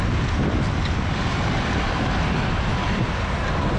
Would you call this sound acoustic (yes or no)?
yes